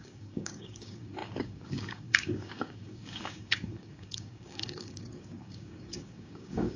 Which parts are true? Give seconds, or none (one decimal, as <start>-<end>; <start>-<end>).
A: none